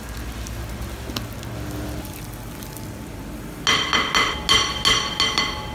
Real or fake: real